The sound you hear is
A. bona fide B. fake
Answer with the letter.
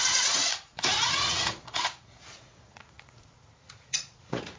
B